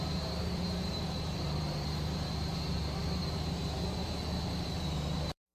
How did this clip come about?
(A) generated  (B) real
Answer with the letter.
A